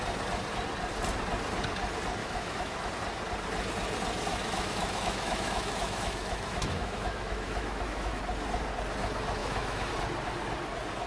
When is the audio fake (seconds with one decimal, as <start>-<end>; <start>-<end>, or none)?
2.2-2.9; 4.3-8.2; 9.4-9.9

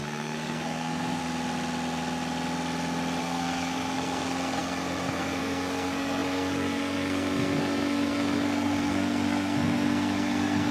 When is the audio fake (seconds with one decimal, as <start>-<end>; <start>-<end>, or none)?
0.0-1.2; 3.2-10.7

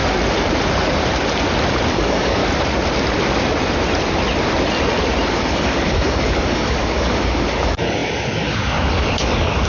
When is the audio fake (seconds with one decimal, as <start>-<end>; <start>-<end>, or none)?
1.9-2.4; 5.3-9.7

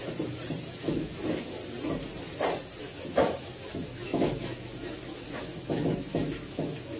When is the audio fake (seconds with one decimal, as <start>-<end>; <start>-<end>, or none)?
0.8-1.6; 2.8-7.0

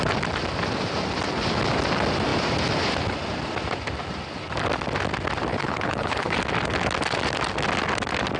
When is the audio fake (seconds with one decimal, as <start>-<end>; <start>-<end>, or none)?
5.5-6.4

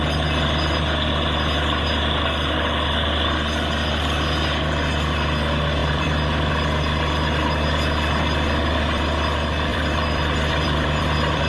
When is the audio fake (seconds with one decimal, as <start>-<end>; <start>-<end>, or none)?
5.8-6.5; 9.7-11.5